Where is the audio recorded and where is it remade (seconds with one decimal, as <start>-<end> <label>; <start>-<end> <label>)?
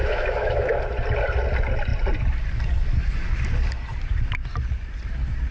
0.0-0.8 remade; 0.8-5.5 recorded